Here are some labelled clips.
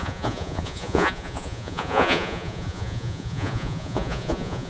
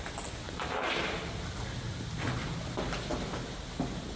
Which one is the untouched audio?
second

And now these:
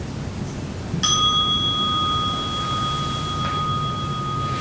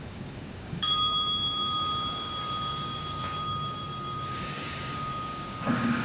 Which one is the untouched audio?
first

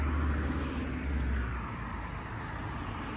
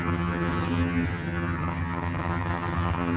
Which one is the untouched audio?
first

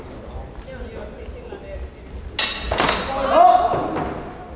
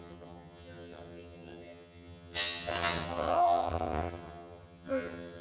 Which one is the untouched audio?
first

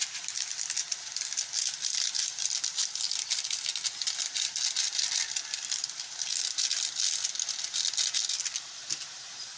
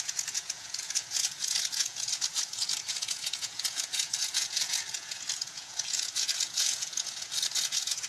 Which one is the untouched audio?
first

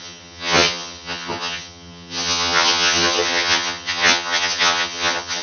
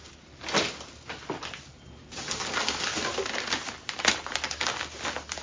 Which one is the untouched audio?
second